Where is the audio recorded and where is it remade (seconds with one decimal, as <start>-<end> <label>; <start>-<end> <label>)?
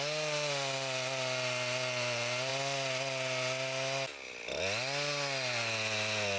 0.0-6.4 recorded